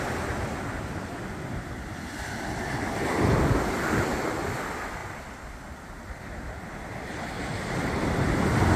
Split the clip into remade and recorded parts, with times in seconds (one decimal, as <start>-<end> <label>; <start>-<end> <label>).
0.0-8.8 recorded